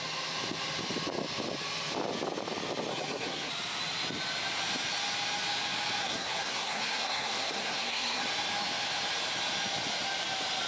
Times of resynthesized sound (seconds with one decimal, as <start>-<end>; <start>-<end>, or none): 2.9-3.5; 6.0-8.2